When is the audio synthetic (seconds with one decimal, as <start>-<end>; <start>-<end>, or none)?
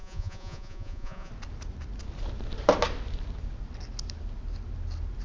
0.0-1.3